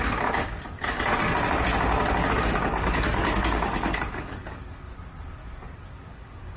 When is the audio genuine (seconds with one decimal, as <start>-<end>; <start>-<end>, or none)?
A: 0.0-2.7; 4.9-5.4